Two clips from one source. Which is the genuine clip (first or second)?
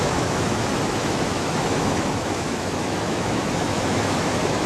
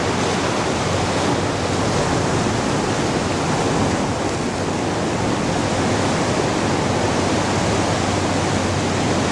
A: second